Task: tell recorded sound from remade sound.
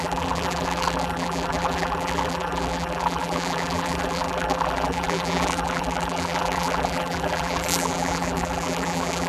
remade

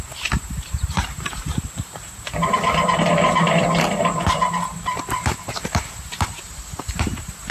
remade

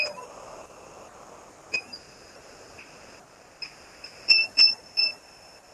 recorded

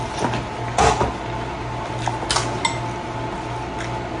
recorded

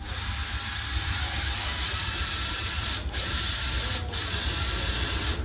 remade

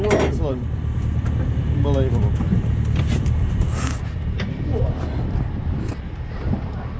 remade